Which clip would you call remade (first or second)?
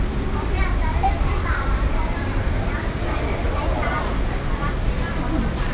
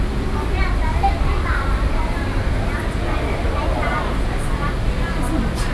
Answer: first